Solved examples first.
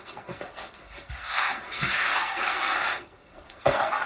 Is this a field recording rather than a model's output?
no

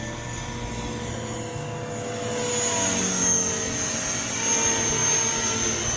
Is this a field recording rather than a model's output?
yes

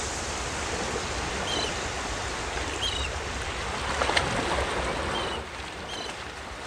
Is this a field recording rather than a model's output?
yes